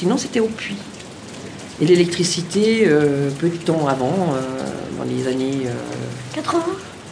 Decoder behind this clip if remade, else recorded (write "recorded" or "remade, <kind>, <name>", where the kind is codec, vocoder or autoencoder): recorded